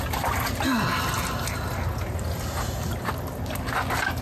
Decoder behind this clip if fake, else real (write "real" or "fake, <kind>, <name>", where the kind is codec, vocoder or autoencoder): real